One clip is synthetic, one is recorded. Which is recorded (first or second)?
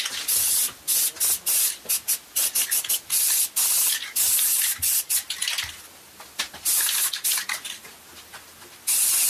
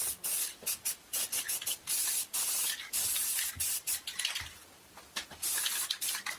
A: first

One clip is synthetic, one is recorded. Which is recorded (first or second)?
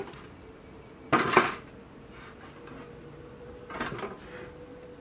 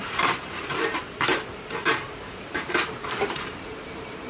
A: first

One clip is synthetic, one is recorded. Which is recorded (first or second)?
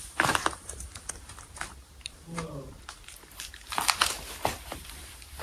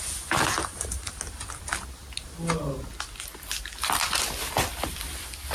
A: second